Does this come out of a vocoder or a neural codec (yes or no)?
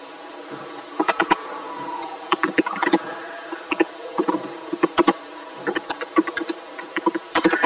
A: yes